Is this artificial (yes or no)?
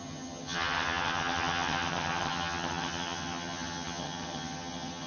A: yes